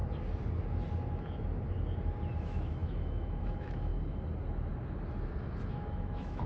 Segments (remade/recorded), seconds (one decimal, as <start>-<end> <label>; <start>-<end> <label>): 0.0-2.4 recorded; 2.4-3.9 remade; 3.9-5.7 recorded; 5.7-6.5 remade